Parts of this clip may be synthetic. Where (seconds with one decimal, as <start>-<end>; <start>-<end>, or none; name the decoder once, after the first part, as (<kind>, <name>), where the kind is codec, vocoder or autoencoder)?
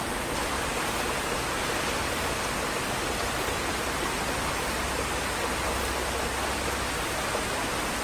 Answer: none